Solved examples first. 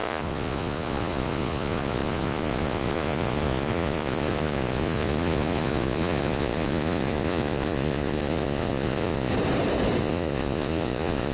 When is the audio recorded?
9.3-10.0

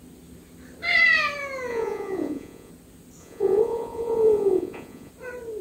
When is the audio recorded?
0.0-1.7; 2.7-3.2; 5.1-5.6

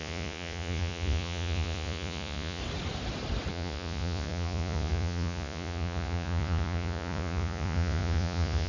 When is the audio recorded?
2.6-3.5

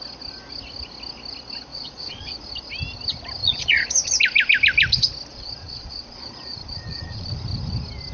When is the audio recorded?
0.0-1.7; 2.4-3.4; 4.2-5.3; 7.3-8.1